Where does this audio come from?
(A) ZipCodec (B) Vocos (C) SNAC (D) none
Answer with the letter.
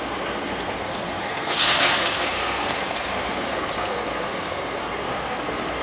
C